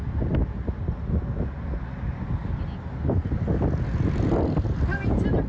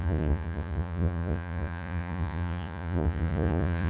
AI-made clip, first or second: second